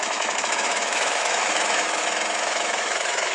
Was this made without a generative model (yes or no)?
no